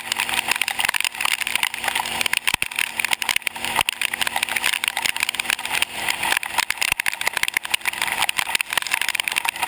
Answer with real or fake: real